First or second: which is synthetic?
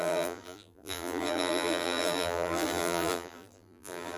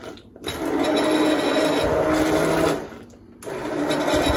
first